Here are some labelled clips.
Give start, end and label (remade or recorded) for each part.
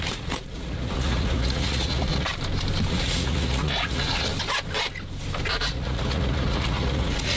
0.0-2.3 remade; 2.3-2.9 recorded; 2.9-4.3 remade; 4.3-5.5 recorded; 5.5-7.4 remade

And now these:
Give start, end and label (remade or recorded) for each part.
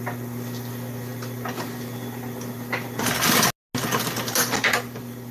0.0-5.3 recorded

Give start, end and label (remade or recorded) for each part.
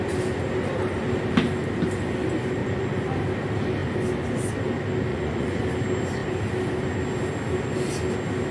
0.0-2.6 recorded; 2.6-3.1 remade; 3.1-5.1 recorded; 5.1-5.6 remade; 5.6-8.5 recorded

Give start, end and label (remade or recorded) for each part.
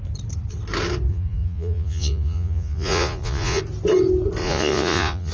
0.0-1.1 recorded; 1.1-3.6 remade; 3.6-4.4 recorded; 4.4-5.3 remade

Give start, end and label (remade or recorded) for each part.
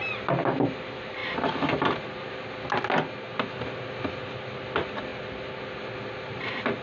0.0-6.8 recorded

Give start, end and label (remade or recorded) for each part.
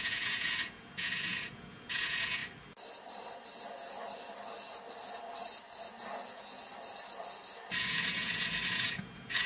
0.0-2.4 remade; 2.4-6.3 recorded; 6.3-6.7 remade; 6.7-7.8 recorded; 7.8-9.5 remade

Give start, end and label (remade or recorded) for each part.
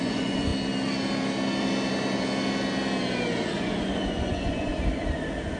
0.0-0.5 remade; 0.5-3.5 recorded; 3.5-4.7 remade; 4.7-5.6 recorded